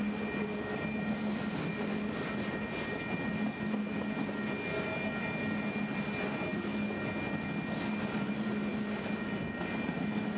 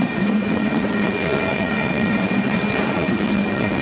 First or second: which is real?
first